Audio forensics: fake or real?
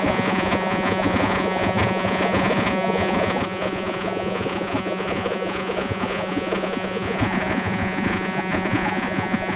fake